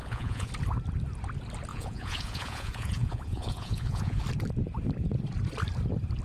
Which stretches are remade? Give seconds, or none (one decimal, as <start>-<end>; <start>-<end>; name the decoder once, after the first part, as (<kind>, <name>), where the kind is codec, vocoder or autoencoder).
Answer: 0.0-0.5 (vocoder, Vocos); 1.7-4.2